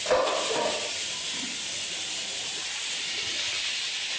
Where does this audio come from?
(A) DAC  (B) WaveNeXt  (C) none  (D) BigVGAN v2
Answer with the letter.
C